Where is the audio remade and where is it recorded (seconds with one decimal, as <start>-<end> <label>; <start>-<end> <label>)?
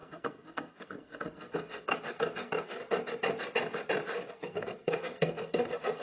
0.0-2.8 remade; 2.8-4.3 recorded; 4.3-6.0 remade